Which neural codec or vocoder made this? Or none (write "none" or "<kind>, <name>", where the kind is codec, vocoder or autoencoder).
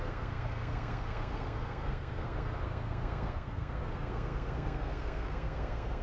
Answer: codec, SNAC